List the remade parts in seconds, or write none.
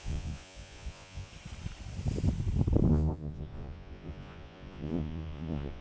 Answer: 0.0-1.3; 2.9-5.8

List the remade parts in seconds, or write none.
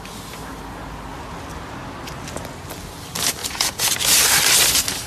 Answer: 3.4-4.0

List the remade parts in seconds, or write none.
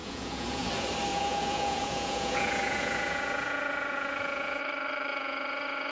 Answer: 0.0-0.7; 1.1-4.6; 5.1-5.9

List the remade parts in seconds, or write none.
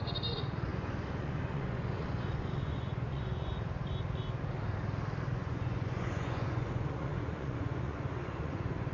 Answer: 0.0-3.5; 5.3-8.9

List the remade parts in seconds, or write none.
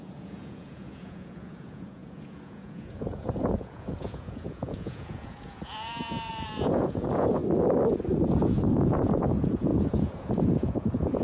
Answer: 0.0-7.4; 8.3-11.2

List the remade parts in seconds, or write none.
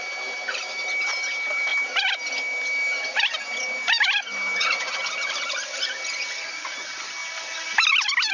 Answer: none